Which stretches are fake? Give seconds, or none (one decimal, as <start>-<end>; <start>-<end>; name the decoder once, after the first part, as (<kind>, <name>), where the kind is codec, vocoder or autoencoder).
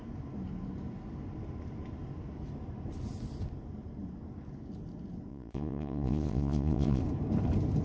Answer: 5.3-7.0 (vocoder, Vocos)